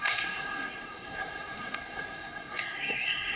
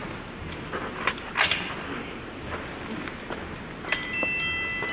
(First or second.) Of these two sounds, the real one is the second